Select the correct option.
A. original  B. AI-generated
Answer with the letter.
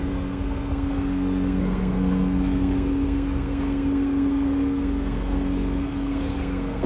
B